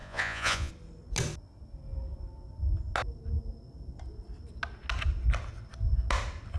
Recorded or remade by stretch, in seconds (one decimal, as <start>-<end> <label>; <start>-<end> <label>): 0.0-0.7 remade; 0.7-6.6 recorded